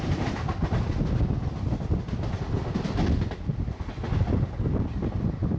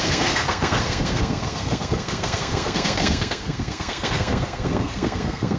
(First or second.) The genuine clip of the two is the first